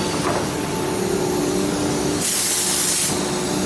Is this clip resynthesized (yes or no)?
no